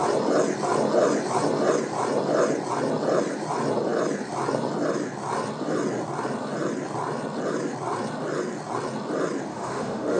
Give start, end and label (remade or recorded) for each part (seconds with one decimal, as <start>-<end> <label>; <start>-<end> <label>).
0.0-9.5 recorded; 9.5-10.2 remade